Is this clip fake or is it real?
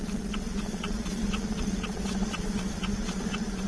fake